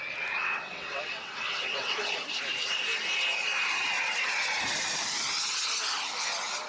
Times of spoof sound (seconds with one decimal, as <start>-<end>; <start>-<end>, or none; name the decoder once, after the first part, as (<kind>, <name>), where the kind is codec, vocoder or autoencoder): 0.4-2.0 (vocoder, WaveNeXt)